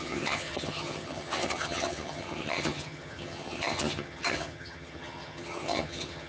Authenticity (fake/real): fake